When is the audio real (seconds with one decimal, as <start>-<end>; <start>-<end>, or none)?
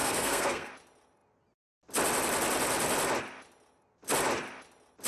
0.7-5.1